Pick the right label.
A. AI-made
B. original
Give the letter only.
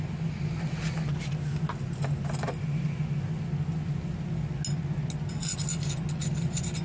B